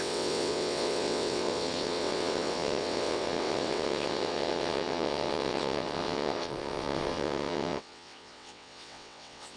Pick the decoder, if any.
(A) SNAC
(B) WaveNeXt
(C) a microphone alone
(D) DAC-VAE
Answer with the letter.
B